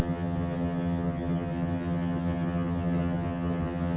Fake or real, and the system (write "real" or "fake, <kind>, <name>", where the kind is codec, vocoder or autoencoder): fake, vocoder, HiFi-GAN